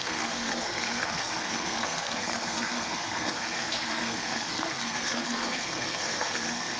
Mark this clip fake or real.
fake